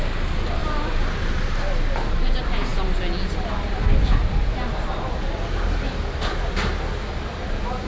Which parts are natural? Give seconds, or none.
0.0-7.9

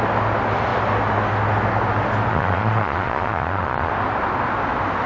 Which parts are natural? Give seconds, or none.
0.0-2.3; 3.9-5.1